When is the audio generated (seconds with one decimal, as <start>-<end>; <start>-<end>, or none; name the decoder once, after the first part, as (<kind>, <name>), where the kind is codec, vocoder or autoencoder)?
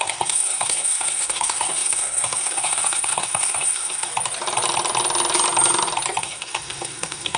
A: 0.0-4.1 (codec, SNAC); 6.2-7.4